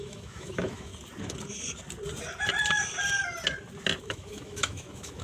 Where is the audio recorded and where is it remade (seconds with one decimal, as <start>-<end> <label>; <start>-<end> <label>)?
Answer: 0.0-0.9 remade; 0.9-4.0 recorded; 4.0-5.2 remade